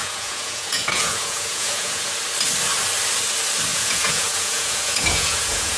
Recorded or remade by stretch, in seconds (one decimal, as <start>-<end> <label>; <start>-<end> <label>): 0.0-2.1 remade; 2.1-3.7 recorded; 3.7-5.8 remade